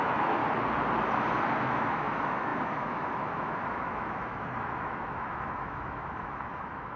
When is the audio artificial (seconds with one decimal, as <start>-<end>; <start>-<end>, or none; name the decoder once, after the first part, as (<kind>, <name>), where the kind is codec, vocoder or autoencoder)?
0.0-0.4 (autoencoder, DAC-VAE); 1.6-7.0